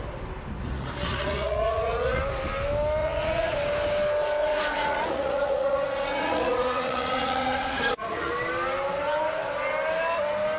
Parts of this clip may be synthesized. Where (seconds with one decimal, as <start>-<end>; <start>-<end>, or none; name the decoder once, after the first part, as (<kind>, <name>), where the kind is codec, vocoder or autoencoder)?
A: 0.6-2.2 (vocoder, Vocos); 3.0-3.5; 4.4-8.3